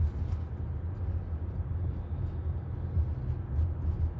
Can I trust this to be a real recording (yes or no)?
yes